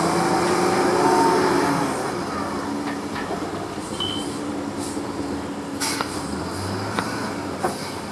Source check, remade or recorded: recorded